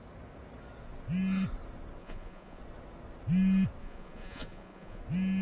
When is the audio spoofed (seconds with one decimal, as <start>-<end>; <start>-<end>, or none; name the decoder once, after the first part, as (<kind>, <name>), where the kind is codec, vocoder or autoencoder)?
2.0-2.6 (vocoder, Vocos); 3.8-5.0